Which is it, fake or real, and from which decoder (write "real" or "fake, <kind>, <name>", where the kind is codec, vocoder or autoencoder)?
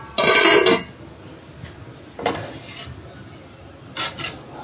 real